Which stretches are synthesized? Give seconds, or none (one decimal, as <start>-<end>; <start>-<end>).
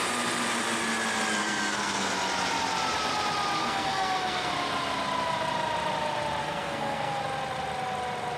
1.4-2.1; 3.6-4.5; 6.4-7.2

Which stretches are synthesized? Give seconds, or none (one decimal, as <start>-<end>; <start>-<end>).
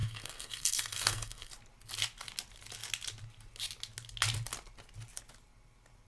0.0-1.5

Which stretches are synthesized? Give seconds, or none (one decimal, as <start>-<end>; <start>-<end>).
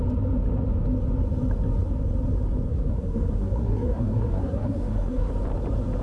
2.7-5.3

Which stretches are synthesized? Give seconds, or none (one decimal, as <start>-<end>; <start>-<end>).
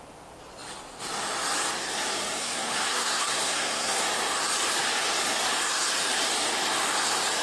2.4-4.0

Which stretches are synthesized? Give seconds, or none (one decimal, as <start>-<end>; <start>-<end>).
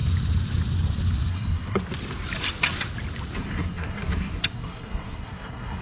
1.3-1.9; 3.4-5.8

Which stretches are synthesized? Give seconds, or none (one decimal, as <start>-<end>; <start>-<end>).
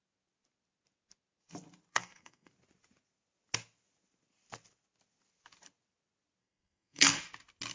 1.9-2.5; 6.4-7.2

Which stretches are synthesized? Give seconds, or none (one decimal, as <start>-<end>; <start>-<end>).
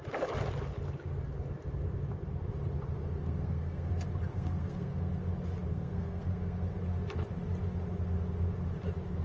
3.2-3.9; 4.3-5.1; 5.7-6.8